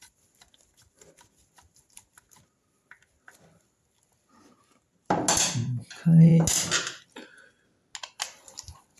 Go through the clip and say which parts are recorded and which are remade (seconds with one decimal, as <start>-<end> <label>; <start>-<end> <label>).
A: 0.0-9.0 recorded